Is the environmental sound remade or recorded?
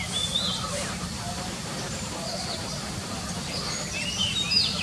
recorded